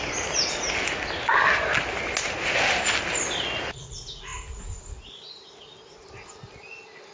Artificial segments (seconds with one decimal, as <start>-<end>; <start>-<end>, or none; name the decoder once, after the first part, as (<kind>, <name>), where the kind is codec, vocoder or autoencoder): none